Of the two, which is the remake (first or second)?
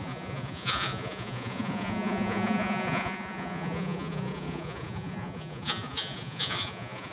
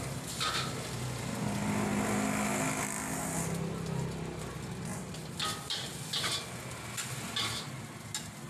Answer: first